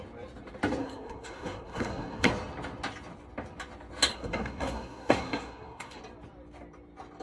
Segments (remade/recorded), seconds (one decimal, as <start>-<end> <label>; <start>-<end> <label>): 0.0-0.8 recorded; 0.8-2.3 remade; 2.3-4.1 recorded; 4.1-6.0 remade; 6.0-7.2 recorded